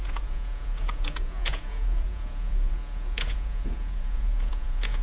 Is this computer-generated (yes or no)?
yes